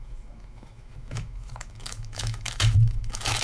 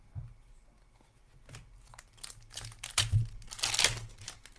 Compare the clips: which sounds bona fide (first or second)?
second